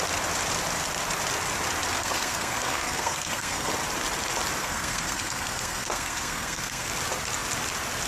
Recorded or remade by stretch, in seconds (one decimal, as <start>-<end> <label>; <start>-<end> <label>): 0.0-2.0 recorded; 2.0-3.7 remade; 3.7-4.6 recorded; 4.6-6.9 remade; 6.9-8.1 recorded